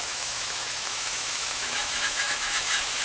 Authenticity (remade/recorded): remade